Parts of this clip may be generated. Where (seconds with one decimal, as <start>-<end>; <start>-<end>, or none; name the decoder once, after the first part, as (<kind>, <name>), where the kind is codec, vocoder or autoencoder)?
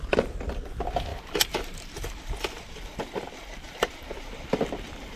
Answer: 1.1-3.9 (vocoder, BigVGAN v2)